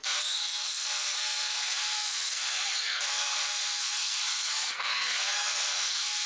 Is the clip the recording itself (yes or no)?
no